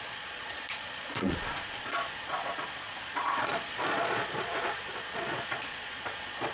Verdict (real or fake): fake